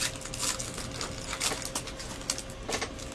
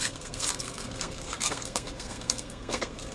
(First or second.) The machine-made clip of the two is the second